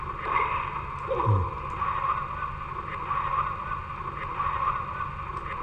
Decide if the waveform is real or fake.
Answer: real